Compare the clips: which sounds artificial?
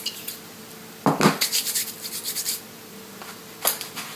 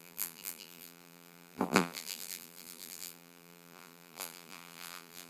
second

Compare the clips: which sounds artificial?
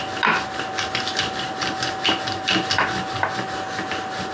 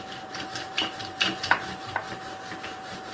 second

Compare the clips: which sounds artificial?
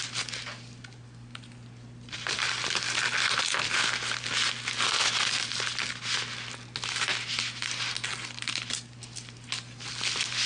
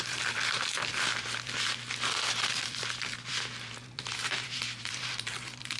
second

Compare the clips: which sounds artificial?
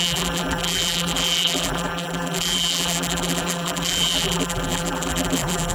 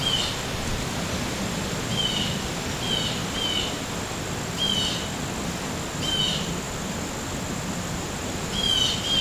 first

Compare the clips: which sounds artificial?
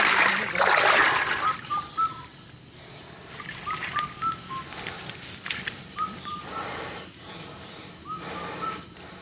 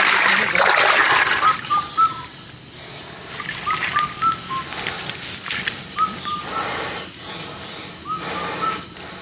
first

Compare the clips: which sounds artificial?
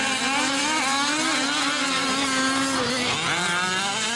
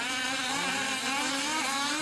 second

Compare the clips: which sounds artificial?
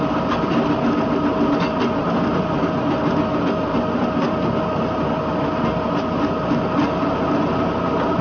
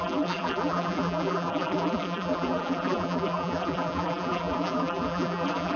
second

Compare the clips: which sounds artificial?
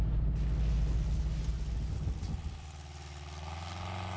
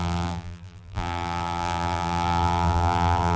second